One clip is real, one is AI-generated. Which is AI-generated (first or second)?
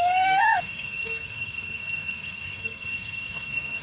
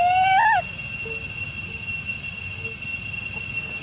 first